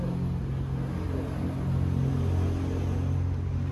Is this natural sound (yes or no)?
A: yes